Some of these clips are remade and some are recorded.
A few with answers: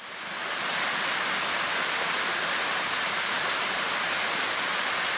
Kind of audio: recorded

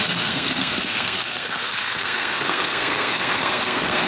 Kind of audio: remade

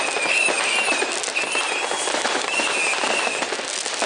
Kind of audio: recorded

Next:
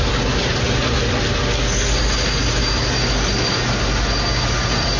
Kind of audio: recorded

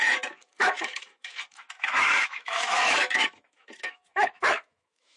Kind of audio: remade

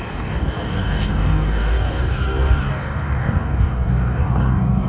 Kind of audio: remade